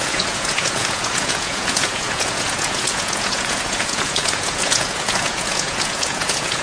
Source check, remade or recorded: remade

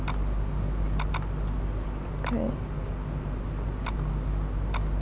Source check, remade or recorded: recorded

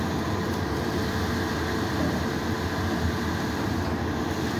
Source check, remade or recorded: recorded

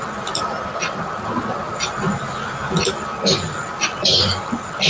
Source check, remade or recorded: recorded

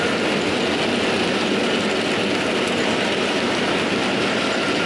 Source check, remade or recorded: recorded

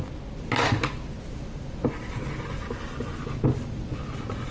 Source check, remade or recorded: recorded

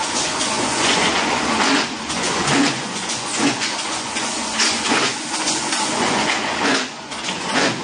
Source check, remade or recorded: remade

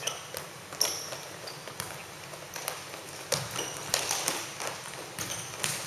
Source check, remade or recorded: recorded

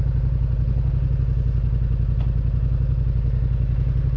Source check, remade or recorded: recorded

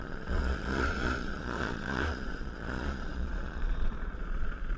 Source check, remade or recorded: remade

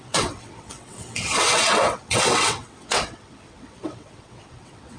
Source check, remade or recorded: remade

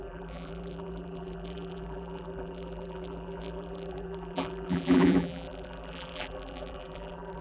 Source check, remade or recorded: remade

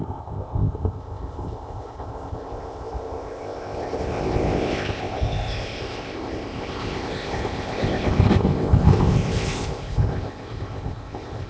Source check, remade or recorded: remade